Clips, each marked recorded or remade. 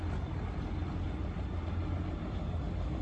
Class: recorded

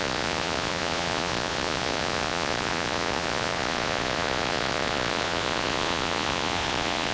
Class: remade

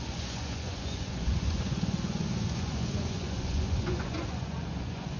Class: remade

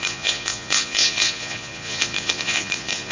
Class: remade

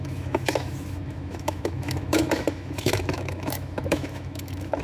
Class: remade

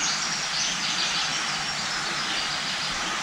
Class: recorded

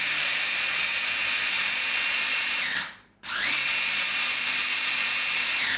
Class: remade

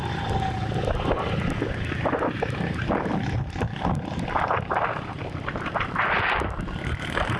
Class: recorded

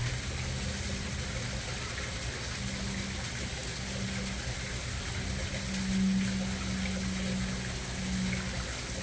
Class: recorded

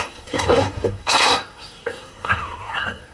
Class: remade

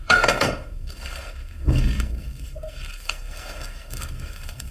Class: remade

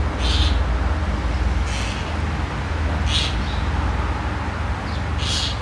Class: recorded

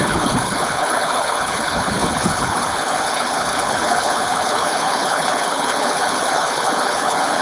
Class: remade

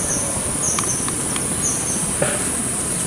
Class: recorded